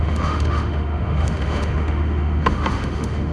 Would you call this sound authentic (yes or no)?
no